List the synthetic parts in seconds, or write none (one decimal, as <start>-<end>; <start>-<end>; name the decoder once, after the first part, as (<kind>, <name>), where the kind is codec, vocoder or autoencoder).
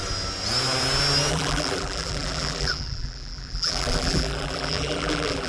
1.3-5.5 (vocoder, BigVGAN v2)